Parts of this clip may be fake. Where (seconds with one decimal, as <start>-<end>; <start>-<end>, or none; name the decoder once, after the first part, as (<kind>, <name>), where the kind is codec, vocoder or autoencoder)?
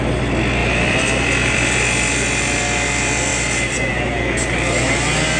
0.6-2.6 (vocoder, BigVGAN v2); 3.3-3.9